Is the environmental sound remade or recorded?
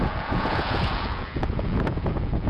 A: remade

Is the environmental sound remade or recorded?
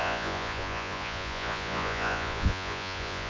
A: remade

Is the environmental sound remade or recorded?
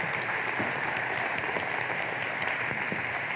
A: recorded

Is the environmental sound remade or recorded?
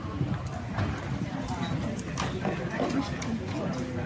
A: recorded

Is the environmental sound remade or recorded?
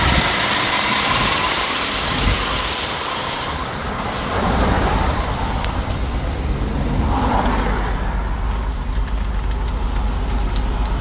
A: recorded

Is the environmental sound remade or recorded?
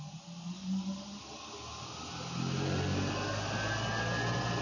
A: recorded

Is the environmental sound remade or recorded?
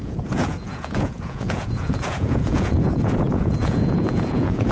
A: remade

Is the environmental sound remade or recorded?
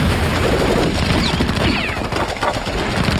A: recorded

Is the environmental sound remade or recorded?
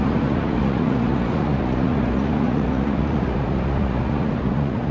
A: remade